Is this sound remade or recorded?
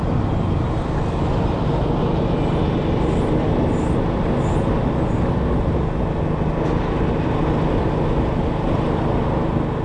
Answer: recorded